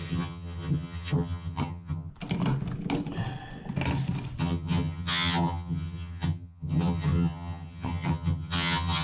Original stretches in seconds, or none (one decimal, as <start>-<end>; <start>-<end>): 2.1-4.4